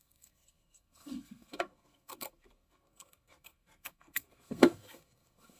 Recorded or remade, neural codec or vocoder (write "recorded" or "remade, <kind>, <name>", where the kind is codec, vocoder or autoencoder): remade, codec, SNAC